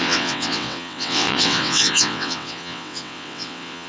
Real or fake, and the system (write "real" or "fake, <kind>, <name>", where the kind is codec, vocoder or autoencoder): fake, vocoder, WaveNeXt